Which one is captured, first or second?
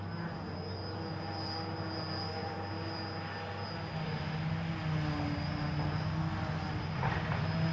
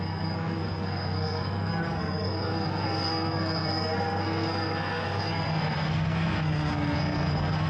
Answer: first